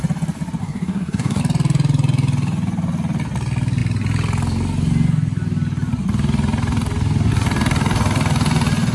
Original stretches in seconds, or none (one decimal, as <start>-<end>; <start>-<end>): 0.0-0.6; 1.4-8.9